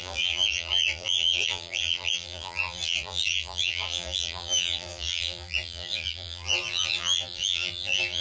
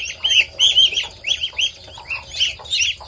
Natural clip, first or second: second